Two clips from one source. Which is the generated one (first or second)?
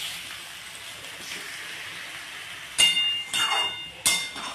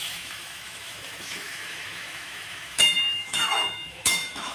second